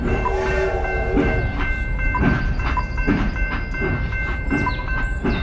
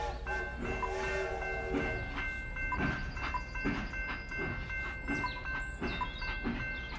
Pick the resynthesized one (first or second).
first